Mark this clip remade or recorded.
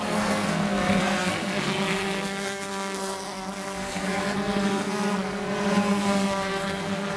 remade